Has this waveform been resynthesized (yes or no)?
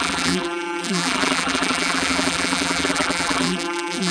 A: yes